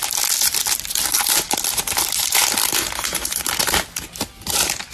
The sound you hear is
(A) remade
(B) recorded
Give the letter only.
B